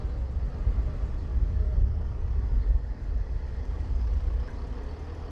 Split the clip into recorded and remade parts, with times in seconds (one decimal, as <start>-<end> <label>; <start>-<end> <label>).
0.0-1.3 recorded; 1.3-4.5 remade; 4.5-5.3 recorded